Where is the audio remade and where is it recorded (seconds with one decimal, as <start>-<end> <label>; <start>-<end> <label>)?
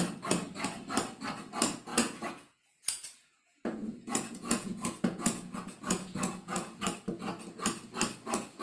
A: 0.0-1.9 recorded; 1.9-6.8 remade; 6.8-8.6 recorded